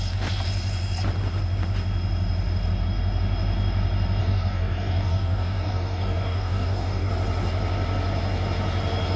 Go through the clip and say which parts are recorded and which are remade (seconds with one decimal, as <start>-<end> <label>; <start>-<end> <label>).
0.0-4.2 recorded; 4.2-7.1 remade; 7.1-9.2 recorded